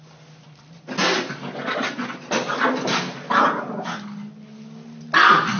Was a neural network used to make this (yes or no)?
no